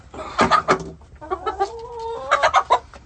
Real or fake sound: real